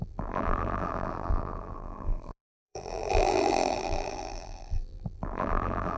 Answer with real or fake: fake